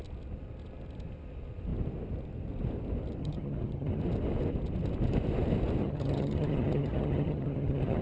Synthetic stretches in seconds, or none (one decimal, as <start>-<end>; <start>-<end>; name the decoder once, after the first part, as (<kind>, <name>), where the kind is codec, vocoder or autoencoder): 3.2-4.0 (vocoder, HiFi-GAN); 5.8-8.0